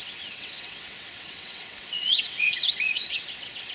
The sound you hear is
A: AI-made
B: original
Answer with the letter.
A